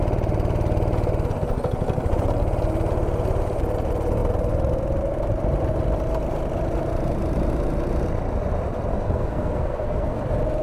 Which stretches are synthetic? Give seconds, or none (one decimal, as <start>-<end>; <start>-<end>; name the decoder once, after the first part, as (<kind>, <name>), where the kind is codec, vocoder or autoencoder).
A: 8.9-10.2 (codec, SNAC)